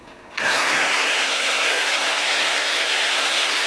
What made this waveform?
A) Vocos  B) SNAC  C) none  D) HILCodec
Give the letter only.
B